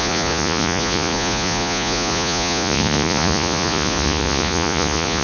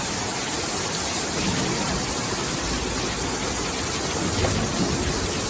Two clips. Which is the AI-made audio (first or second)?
first